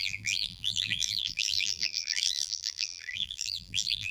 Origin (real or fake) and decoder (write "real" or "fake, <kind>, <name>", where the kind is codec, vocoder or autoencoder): fake, vocoder, BigVGAN v2